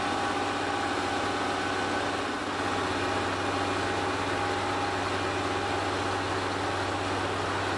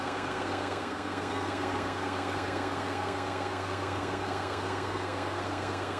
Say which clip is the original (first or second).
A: first